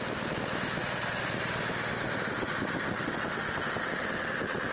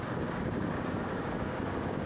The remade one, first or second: second